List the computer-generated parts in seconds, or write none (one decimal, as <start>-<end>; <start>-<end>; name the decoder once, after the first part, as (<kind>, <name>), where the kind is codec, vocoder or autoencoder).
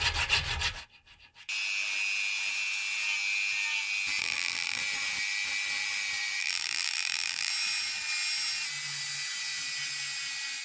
4.2-4.8 (vocoder, BigVGAN v2); 6.4-7.5